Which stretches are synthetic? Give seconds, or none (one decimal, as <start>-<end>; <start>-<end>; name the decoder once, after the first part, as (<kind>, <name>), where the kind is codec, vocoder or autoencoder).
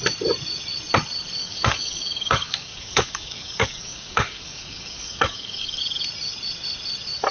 1.4-5.8 (codec, DAC)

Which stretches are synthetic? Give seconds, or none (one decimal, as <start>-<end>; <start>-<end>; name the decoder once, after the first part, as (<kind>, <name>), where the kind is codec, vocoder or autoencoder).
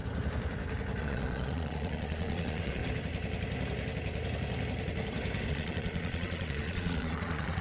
1.0-2.8 (vocoder, Vocos); 5.5-7.6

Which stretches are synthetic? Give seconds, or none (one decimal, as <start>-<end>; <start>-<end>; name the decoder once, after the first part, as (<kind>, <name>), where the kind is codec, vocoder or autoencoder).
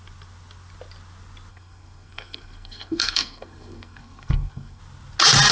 1.5-4.8 (codec, SNAC)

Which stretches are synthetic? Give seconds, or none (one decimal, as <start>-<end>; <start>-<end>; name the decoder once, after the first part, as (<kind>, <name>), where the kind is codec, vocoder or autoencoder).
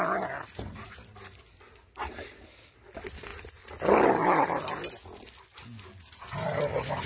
none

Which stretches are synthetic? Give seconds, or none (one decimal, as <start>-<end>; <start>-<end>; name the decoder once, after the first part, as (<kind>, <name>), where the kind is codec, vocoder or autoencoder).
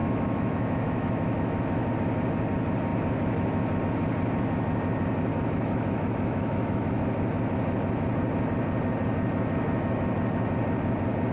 0.0-1.9 (autoencoder, DAC-VAE); 5.3-7.0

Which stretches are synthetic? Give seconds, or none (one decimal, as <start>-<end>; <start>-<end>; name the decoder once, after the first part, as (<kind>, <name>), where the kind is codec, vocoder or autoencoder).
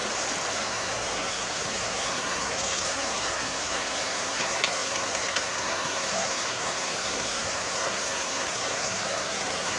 0.5-9.8 (codec, SNAC)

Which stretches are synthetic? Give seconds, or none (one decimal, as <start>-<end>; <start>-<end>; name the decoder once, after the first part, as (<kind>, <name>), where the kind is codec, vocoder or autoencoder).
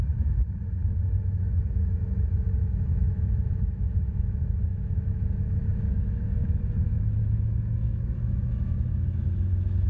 0.0-9.9 (autoencoder, DAC-VAE)